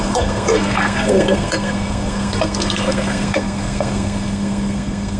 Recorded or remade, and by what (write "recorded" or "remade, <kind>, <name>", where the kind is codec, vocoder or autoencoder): remade, codec, SNAC